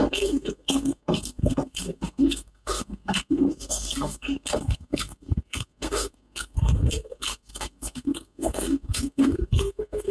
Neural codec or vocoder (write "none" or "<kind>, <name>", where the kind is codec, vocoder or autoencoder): codec, SNAC